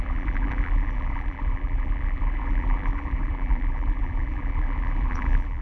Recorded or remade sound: remade